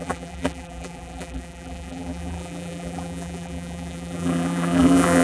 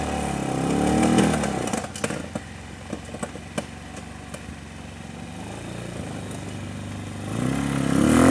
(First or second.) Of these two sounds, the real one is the second